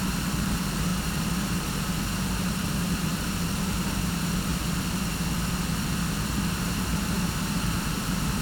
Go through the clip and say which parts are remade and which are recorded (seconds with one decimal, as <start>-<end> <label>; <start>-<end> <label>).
0.0-4.5 remade; 4.5-6.1 recorded; 6.1-8.4 remade

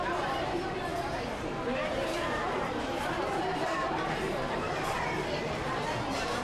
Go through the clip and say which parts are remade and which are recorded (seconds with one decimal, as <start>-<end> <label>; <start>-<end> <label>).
0.0-6.4 remade

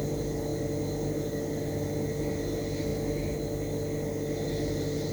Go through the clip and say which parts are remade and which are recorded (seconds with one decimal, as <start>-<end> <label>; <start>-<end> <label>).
0.0-5.1 recorded

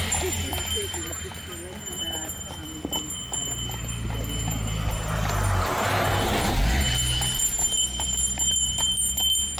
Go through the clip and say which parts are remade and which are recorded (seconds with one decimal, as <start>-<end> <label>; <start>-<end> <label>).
0.0-1.3 remade; 1.3-1.9 recorded; 1.9-2.6 remade; 2.6-7.4 recorded; 7.4-9.6 remade

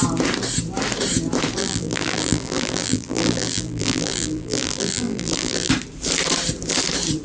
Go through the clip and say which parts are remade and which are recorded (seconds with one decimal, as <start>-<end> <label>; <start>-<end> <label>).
0.0-1.6 recorded; 1.6-5.7 remade; 5.7-7.2 recorded

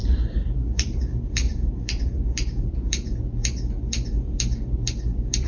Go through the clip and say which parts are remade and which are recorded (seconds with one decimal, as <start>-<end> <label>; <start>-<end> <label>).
0.0-3.2 remade; 3.2-5.5 recorded

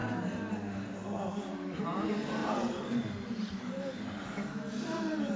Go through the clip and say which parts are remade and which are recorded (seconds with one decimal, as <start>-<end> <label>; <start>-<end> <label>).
0.0-2.4 recorded; 2.4-5.4 remade

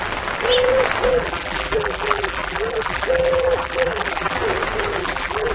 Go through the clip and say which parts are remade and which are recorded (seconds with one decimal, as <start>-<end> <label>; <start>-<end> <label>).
0.0-1.1 recorded; 1.1-4.4 remade; 4.4-5.0 recorded; 5.0-5.5 remade